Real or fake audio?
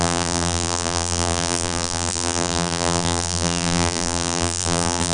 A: fake